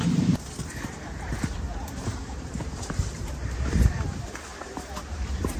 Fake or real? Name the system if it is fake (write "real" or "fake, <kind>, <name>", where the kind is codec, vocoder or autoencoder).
fake, vocoder, BigVGAN v2